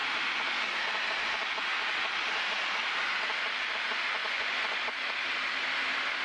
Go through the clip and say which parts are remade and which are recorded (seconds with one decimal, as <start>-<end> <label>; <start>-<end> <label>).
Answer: 0.0-4.2 recorded; 4.2-5.1 remade; 5.1-6.2 recorded